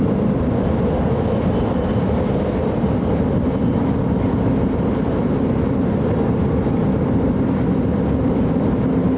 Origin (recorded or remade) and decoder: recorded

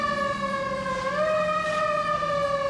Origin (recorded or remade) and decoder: recorded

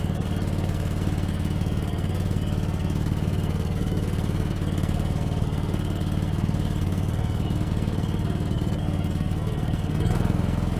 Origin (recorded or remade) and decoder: remade, codec, SNAC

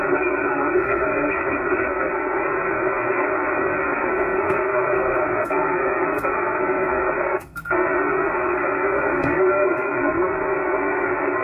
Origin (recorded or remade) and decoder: remade, codec, SNAC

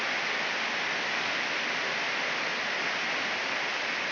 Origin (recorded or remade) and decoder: recorded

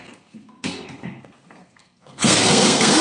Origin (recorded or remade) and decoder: remade, codec, SNAC